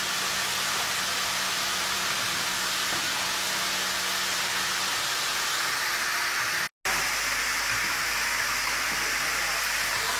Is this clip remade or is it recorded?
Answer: recorded